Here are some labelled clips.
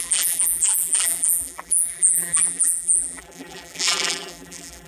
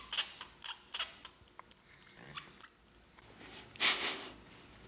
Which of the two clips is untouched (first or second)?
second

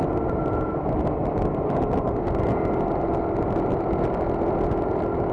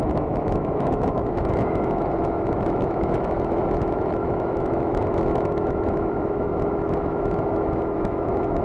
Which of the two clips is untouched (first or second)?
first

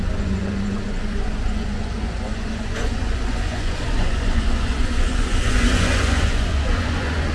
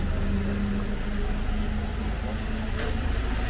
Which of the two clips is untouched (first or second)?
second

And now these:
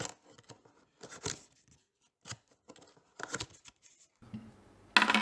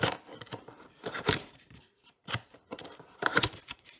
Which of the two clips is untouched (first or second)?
first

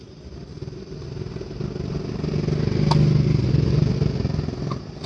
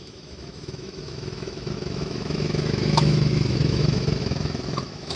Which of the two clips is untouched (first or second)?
first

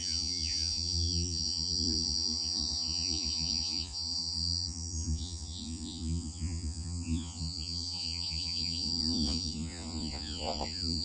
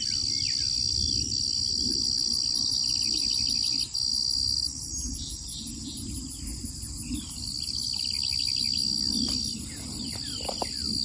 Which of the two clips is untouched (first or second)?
second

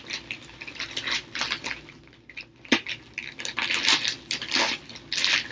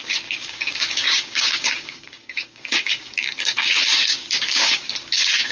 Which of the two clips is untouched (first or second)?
first